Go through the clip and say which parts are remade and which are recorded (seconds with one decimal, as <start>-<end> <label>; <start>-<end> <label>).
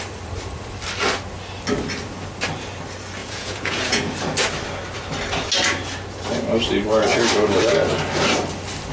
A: 0.0-3.2 recorded; 3.2-4.1 remade; 4.1-8.9 recorded